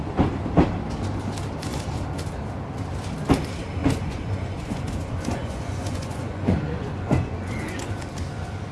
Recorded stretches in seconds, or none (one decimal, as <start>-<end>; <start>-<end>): 0.0-3.8; 7.9-8.7